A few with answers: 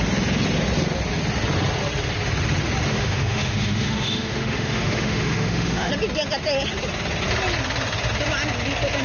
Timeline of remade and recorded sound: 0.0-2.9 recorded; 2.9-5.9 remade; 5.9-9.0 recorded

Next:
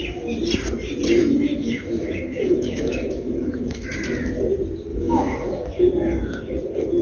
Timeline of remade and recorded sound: 0.0-1.2 recorded; 1.2-3.9 remade; 3.9-4.9 recorded; 4.9-5.8 remade; 5.8-7.0 recorded

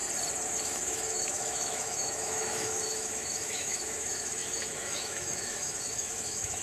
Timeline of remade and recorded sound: 0.0-0.6 recorded; 0.6-6.6 remade

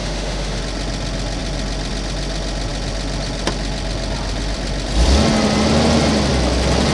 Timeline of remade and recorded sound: 0.0-0.6 remade; 0.6-6.9 recorded

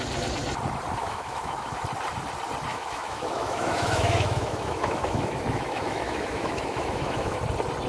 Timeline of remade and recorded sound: 0.0-1.0 recorded; 1.0-1.8 remade; 1.8-2.7 recorded; 2.7-7.4 remade; 7.4-7.9 recorded